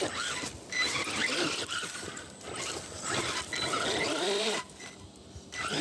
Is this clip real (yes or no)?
yes